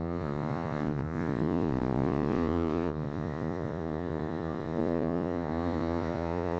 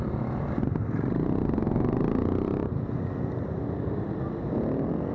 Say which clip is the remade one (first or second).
first